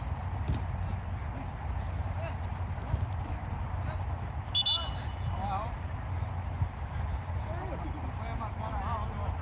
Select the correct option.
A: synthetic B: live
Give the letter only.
B